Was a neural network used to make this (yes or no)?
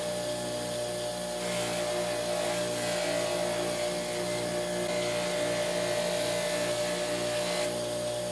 no